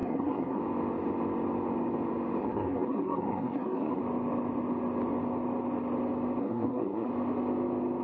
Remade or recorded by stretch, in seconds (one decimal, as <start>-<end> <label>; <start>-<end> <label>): 0.0-0.6 remade; 0.6-2.4 recorded; 2.4-4.0 remade; 4.0-6.4 recorded; 6.4-7.1 remade; 7.1-8.0 recorded